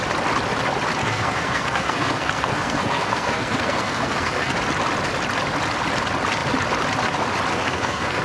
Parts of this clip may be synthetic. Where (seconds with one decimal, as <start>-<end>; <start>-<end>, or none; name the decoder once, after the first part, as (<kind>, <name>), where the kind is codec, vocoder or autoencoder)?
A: 1.0-4.6 (codec, SNAC); 7.5-8.2